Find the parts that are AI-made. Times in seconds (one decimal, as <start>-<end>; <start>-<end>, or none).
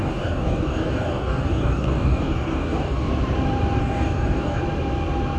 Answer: 0.0-3.1; 3.8-4.6